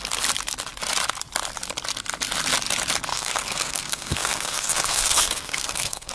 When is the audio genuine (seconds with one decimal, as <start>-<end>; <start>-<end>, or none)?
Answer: 0.0-3.1